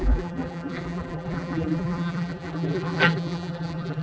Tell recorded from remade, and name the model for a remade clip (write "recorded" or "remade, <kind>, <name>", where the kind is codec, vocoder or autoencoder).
remade, vocoder, BigVGAN v2